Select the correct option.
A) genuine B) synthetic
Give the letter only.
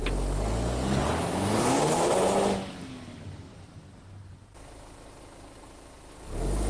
A